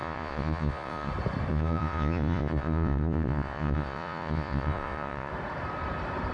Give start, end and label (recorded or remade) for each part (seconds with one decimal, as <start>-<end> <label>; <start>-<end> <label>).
0.0-1.1 remade; 1.1-1.5 recorded; 1.5-5.3 remade; 5.3-6.3 recorded